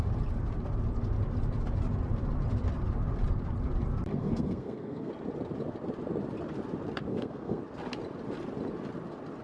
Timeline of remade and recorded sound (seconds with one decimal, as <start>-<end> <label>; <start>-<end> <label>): 0.0-4.1 recorded; 4.1-5.1 remade; 5.1-7.1 recorded; 7.1-7.6 remade; 7.6-9.4 recorded